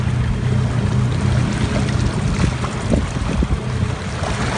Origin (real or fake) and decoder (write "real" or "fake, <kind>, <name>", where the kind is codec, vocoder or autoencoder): real